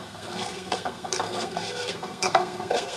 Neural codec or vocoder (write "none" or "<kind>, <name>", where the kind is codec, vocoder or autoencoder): codec, SNAC